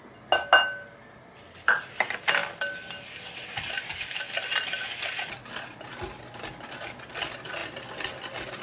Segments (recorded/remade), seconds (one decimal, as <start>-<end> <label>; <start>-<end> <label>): 0.0-8.6 recorded